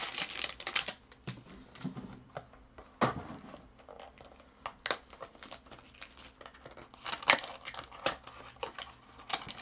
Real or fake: real